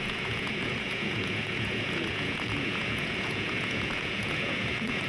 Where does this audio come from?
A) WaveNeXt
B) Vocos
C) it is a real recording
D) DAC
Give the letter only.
B